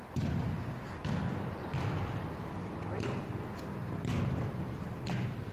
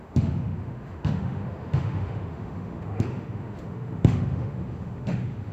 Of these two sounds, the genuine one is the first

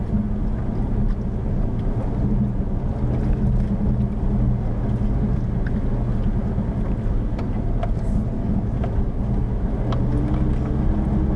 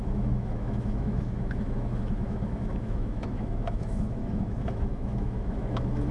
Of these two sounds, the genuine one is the first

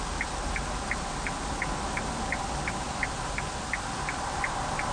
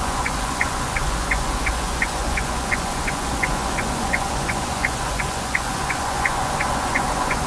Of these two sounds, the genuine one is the first